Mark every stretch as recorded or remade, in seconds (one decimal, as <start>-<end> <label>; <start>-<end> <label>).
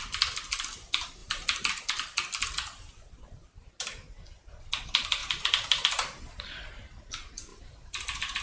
0.0-1.2 recorded; 1.2-1.7 remade; 1.7-5.2 recorded; 5.2-6.2 remade; 6.2-7.5 recorded; 7.5-8.4 remade